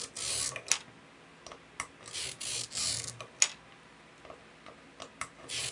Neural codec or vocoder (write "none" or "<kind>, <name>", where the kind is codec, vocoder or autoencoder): none